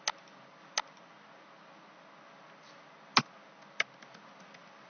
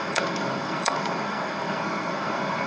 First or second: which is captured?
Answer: first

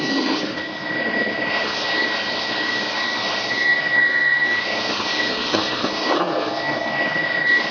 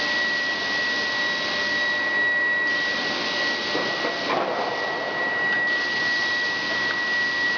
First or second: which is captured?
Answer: second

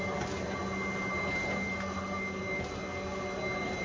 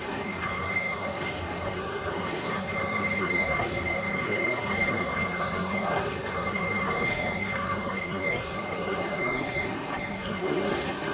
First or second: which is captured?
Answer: first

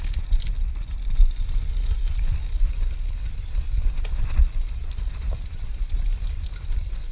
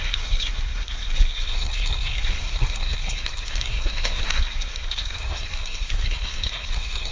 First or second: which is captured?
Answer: first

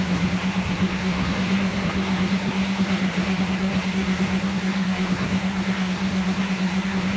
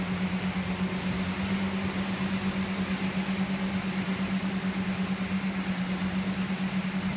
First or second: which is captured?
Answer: second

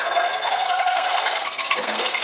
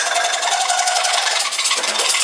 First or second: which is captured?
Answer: second